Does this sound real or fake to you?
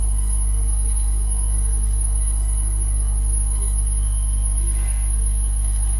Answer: fake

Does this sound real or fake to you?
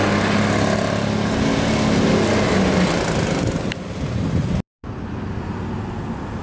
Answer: real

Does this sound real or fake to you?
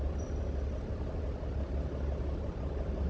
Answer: real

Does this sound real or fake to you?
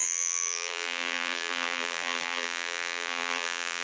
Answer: fake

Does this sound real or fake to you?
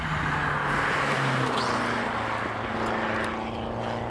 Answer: real